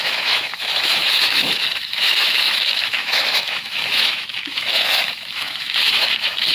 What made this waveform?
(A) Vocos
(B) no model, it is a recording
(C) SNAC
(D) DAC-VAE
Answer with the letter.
D